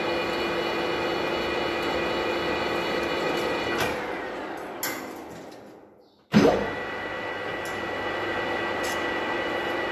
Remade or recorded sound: recorded